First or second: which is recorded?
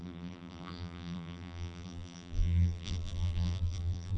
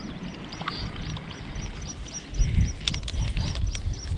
second